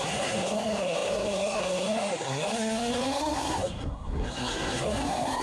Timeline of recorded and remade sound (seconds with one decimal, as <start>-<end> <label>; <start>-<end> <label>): 0.0-5.4 remade